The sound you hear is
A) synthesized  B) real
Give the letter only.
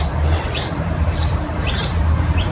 A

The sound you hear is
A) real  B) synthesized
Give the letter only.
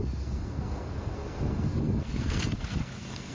B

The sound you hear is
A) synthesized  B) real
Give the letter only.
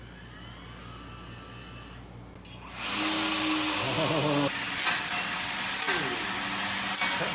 B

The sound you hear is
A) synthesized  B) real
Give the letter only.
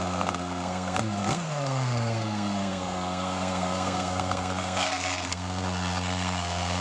A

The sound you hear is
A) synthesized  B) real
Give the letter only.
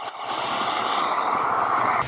B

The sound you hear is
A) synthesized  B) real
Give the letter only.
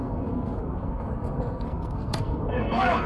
A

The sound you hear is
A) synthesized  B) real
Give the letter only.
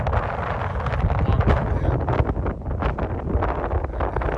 B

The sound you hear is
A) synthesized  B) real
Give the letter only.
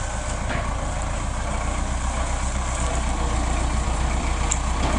A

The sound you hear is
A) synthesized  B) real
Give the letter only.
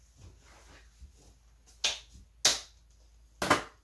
B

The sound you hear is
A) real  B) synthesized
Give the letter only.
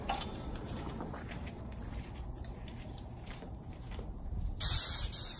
B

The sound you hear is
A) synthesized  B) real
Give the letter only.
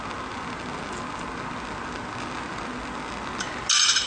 B